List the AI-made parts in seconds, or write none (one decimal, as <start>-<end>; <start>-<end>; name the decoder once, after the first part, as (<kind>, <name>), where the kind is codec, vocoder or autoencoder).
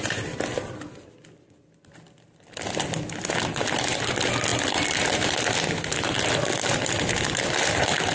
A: none